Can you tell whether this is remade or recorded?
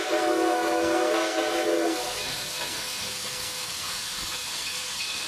remade